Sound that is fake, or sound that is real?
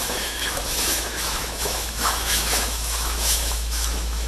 fake